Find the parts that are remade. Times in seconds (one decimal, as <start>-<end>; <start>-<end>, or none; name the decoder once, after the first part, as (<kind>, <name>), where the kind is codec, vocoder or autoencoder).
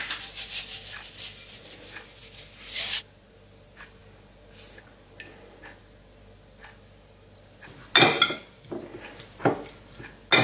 none